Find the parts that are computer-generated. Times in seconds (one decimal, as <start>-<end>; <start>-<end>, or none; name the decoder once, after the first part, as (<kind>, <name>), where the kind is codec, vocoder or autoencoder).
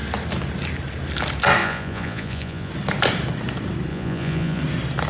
1.6-2.7 (vocoder, Vocos); 3.9-4.6